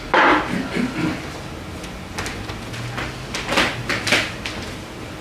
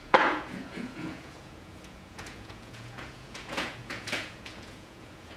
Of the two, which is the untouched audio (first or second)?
first